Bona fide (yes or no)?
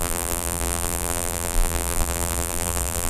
no